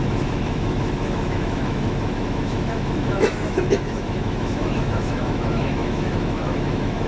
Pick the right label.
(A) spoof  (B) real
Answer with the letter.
A